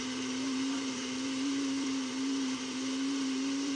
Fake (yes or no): yes